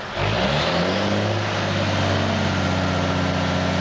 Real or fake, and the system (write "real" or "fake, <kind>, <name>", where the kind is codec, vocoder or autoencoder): real